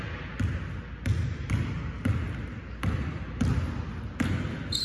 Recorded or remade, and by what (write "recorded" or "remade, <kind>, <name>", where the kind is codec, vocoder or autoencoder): recorded